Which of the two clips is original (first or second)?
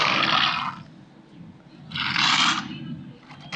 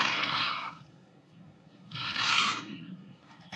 first